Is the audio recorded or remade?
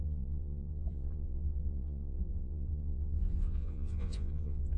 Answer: remade